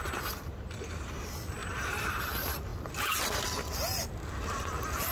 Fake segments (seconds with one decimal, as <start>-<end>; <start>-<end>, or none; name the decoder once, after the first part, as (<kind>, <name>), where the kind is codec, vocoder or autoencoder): 0.5-1.1 (vocoder, BigVGAN v2); 1.6-2.2